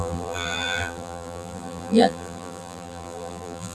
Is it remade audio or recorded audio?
remade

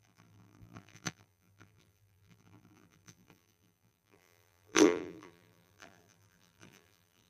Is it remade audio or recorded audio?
remade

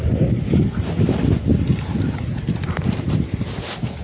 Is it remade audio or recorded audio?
recorded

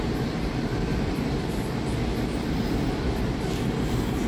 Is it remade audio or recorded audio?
recorded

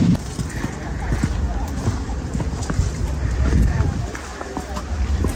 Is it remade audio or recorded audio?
recorded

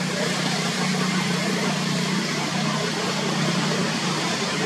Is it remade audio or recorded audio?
remade